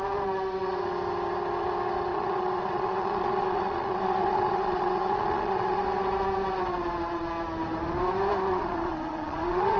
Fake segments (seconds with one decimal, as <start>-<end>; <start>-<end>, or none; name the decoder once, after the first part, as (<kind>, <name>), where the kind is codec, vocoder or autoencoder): 2.1-5.8 (vocoder, Vocos); 8.5-9.8